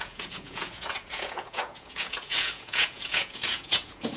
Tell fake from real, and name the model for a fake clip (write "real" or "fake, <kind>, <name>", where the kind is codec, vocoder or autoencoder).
fake, vocoder, Vocos